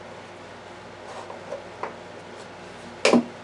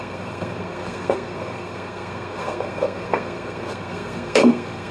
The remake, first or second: second